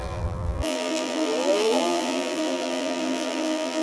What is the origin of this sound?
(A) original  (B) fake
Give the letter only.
B